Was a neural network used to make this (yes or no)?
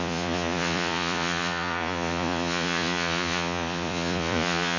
yes